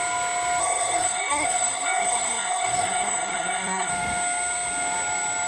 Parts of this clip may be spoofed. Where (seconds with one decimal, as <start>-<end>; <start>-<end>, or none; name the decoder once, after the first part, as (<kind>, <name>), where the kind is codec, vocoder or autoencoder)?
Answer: 0.6-3.9 (codec, SNAC)